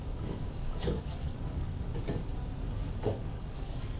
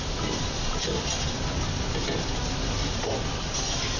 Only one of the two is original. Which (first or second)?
second